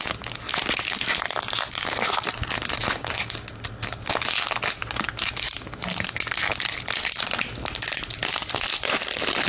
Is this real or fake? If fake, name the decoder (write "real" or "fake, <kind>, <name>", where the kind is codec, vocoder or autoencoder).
real